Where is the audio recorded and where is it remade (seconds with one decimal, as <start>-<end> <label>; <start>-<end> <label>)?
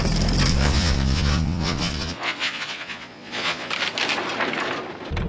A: 0.0-0.5 recorded; 0.5-3.7 remade; 3.7-5.3 recorded